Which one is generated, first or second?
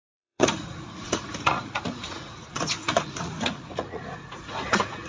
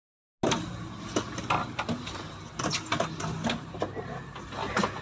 first